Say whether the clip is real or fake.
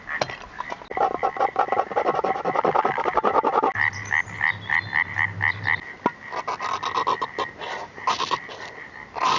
real